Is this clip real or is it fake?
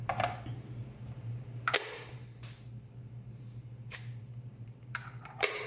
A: fake